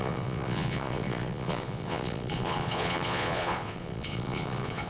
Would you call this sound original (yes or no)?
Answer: no